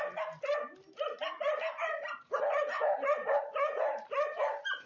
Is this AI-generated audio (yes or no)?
no